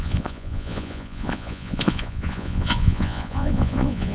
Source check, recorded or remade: remade